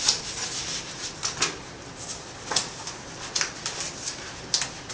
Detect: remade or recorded recorded